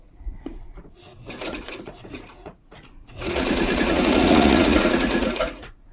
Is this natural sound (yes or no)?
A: no